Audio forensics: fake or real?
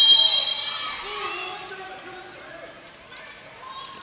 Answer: real